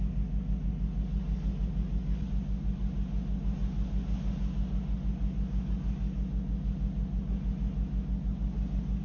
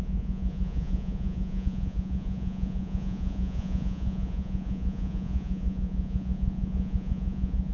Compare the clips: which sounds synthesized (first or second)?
second